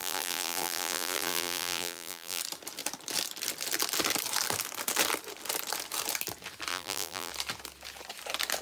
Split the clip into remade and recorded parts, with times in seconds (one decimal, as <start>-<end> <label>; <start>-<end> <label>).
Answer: 0.0-2.4 remade; 2.4-6.7 recorded; 6.7-7.3 remade; 7.3-8.6 recorded